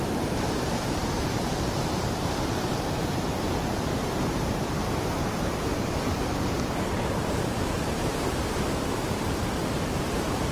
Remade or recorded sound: remade